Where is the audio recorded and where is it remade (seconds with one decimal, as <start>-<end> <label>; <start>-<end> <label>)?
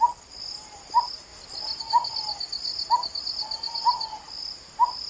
0.0-5.1 recorded